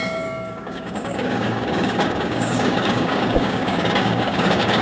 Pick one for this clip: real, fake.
fake